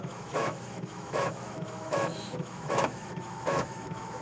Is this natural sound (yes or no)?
no